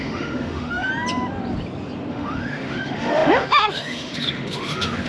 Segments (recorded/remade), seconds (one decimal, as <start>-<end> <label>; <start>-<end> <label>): 0.0-0.9 remade; 0.9-2.1 recorded; 2.1-5.1 remade